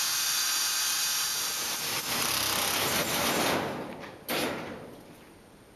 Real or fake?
real